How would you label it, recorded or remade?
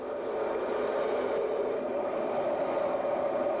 remade